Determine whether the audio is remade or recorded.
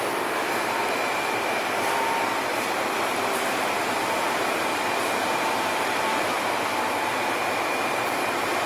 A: remade